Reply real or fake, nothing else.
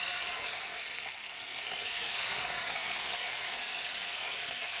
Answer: fake